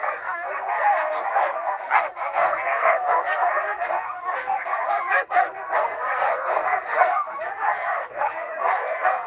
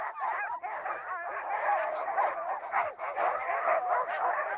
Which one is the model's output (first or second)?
first